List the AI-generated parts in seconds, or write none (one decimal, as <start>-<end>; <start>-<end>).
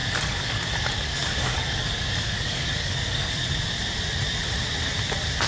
0.0-3.3